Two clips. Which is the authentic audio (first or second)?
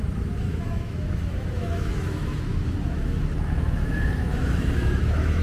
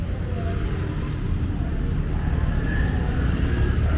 second